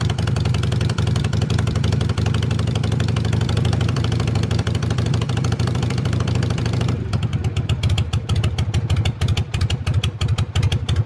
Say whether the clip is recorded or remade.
remade